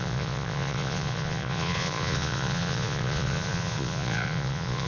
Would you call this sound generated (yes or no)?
yes